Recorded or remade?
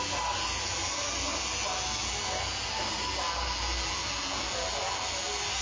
recorded